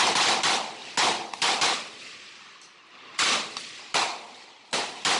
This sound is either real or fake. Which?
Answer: real